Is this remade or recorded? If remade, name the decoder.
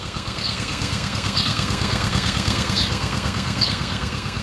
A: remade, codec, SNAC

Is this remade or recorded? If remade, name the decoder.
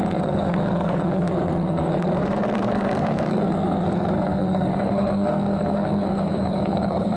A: remade, codec, SNAC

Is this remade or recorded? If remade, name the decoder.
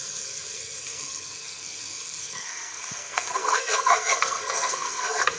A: remade, codec, SNAC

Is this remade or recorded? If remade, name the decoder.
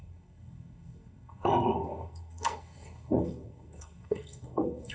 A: remade, codec, SNAC